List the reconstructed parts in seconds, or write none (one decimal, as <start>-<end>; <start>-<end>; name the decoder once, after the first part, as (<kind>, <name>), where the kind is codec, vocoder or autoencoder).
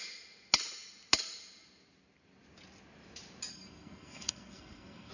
3.5-5.1 (codec, SNAC)